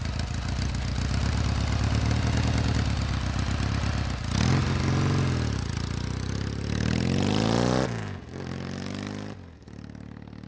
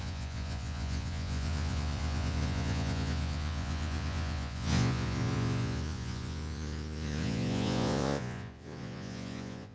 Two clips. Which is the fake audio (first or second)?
second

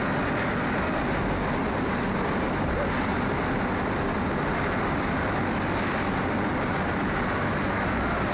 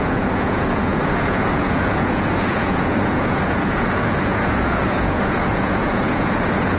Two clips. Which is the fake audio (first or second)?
second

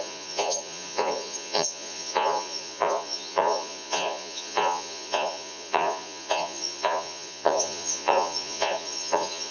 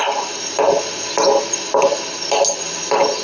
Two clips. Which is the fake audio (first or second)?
first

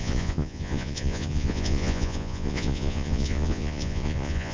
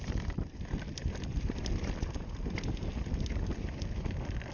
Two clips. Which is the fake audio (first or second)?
first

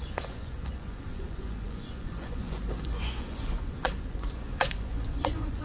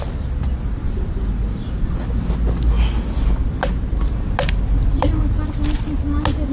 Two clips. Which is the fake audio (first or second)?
first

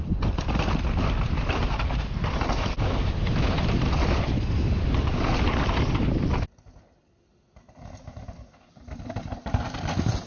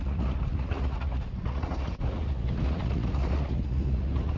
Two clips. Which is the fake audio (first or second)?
second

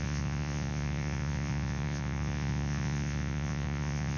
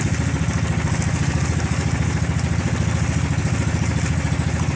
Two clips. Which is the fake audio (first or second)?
first